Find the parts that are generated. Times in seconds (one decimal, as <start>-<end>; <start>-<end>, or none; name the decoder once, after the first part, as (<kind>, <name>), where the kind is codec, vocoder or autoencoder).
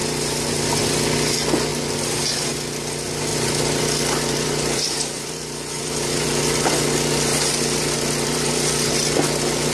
0.0-0.6 (vocoder, BigVGAN v2); 3.3-6.4; 7.8-9.0